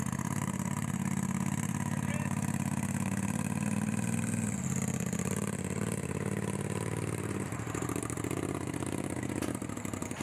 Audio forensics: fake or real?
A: fake